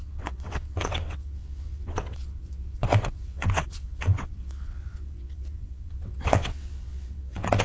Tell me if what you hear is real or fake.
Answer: fake